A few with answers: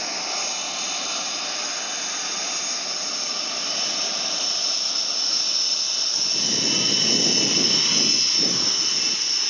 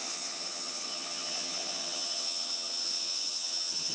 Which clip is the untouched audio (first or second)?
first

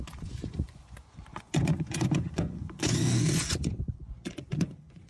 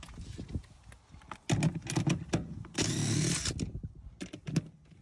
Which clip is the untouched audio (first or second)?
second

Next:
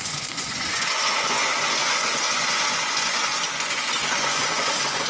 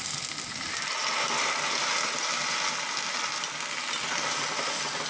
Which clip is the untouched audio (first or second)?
second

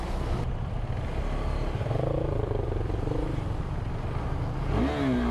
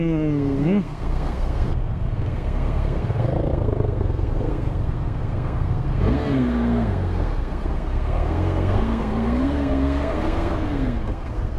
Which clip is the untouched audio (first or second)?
first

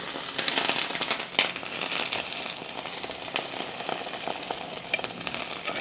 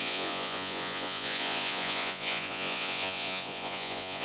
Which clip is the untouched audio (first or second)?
first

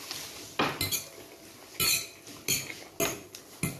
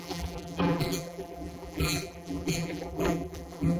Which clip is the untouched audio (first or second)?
first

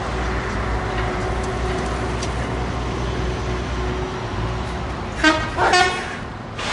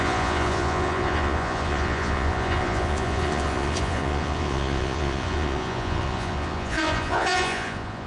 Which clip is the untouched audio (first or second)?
first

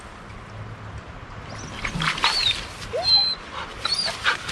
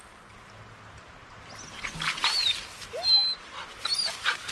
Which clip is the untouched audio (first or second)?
second